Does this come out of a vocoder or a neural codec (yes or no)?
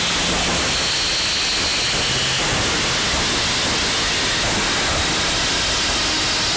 no